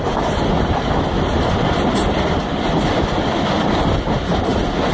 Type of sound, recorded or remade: recorded